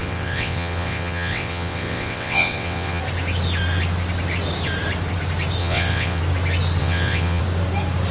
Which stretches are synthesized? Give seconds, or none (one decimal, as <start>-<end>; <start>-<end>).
0.0-3.0; 5.6-6.2; 6.8-7.4